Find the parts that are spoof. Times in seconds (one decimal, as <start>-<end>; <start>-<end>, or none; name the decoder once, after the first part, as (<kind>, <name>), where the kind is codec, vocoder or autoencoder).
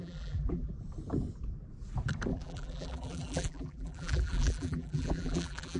0.0-0.7 (vocoder, BigVGAN v2); 2.3-5.8